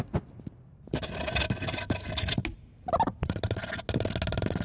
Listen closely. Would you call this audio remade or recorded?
recorded